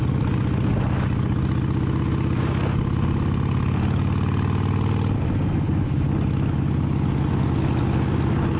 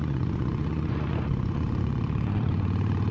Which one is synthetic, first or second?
second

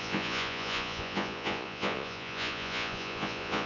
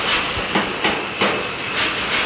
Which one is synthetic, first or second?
first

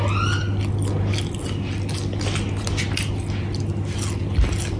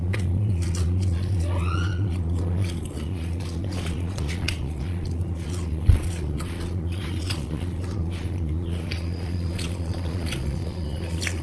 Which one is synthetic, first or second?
second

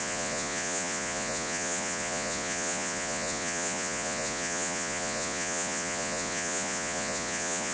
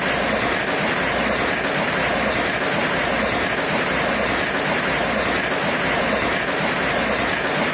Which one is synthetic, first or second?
first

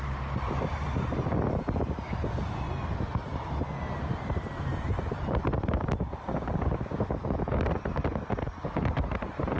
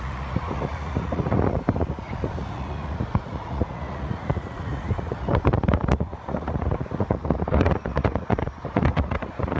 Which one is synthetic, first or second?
second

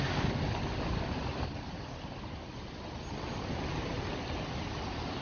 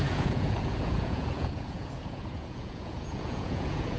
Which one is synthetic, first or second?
second